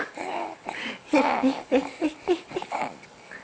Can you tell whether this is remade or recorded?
remade